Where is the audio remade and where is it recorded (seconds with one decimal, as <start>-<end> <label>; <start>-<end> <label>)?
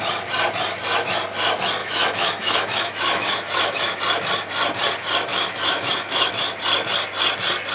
0.0-1.8 recorded; 1.8-4.0 remade; 4.0-5.3 recorded; 5.3-6.3 remade; 6.3-7.7 recorded